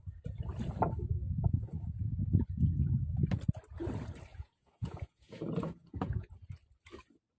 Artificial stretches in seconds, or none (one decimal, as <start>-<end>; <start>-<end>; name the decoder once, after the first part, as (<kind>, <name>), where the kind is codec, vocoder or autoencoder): 4.3-6.3 (vocoder, Vocos)